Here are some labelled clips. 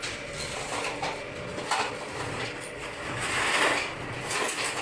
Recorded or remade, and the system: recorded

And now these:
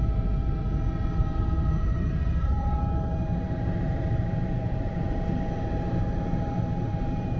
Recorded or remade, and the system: remade, vocoder, BigVGAN v2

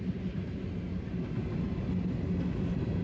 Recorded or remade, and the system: recorded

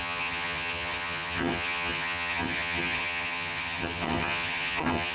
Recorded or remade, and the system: remade, vocoder, HiFi-GAN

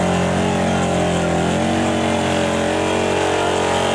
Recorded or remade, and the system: recorded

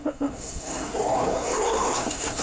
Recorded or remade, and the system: remade, codec, SNAC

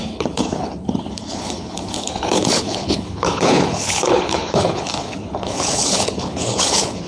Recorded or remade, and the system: remade, codec, HILCodec